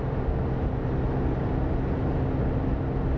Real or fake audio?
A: real